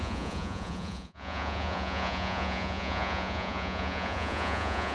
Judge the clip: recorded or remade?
remade